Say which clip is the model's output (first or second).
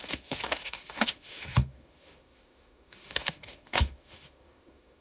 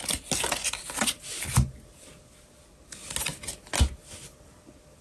first